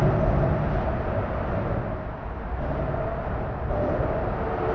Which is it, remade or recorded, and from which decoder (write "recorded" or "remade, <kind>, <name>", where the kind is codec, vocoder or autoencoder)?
recorded